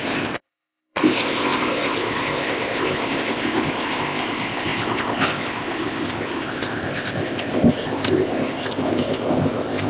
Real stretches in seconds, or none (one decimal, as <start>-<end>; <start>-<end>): none